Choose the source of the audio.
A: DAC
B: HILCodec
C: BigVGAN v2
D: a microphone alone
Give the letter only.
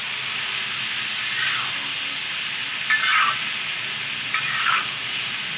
D